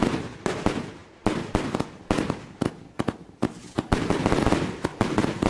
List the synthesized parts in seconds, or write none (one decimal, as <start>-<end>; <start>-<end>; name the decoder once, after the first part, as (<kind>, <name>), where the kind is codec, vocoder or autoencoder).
3.6-4.1 (vocoder, BigVGAN v2); 4.9-5.5